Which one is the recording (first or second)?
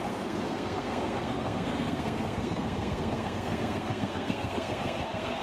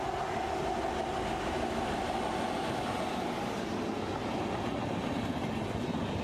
second